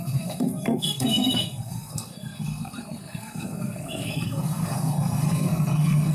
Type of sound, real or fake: fake